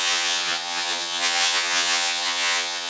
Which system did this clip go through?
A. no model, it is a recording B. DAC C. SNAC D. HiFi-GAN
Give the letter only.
D